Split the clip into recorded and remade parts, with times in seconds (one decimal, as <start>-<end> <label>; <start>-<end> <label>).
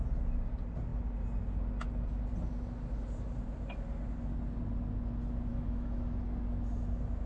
0.0-5.5 recorded; 5.5-6.0 remade; 6.0-7.3 recorded